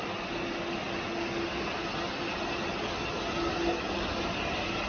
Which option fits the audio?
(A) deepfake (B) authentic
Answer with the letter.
B